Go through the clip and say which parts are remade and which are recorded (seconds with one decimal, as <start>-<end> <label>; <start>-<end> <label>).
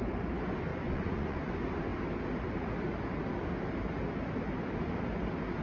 0.0-0.7 recorded; 0.7-1.5 remade; 1.5-5.6 recorded